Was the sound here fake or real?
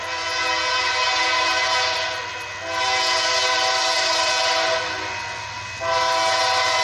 real